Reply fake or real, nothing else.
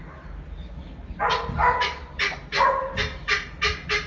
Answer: real